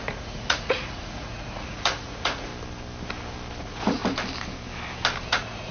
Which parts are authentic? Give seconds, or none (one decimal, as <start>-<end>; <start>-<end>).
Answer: 2.5-3.6; 4.0-5.3